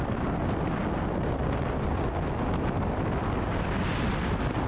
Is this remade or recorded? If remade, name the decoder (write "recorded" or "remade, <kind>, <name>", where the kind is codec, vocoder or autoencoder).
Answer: recorded